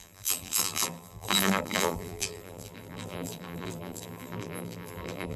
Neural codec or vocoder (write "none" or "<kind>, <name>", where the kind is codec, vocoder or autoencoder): vocoder, BigVGAN v2